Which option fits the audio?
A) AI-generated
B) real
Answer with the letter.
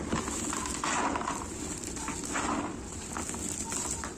B